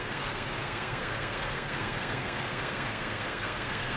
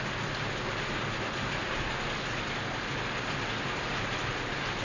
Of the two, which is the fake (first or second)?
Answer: first